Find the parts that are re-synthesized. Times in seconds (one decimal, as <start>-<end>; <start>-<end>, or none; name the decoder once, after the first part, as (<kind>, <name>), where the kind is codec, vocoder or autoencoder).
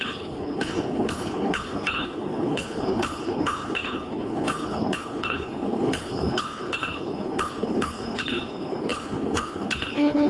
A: 0.0-10.3 (codec, HILCodec)